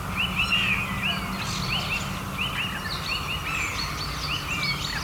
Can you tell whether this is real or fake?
real